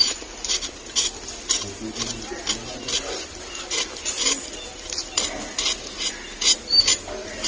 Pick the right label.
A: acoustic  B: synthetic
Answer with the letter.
A